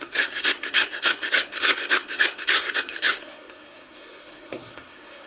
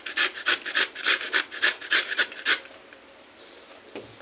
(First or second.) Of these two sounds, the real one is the second